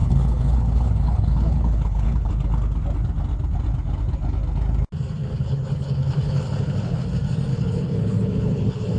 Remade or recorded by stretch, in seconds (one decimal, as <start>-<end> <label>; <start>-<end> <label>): 0.0-2.3 remade; 2.3-5.2 recorded; 5.2-7.1 remade; 7.1-7.5 recorded; 7.5-9.0 remade